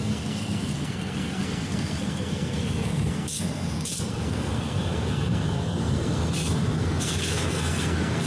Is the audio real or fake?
fake